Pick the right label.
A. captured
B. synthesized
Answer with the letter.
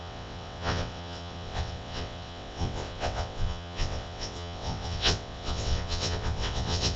B